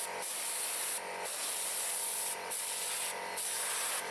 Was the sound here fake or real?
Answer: real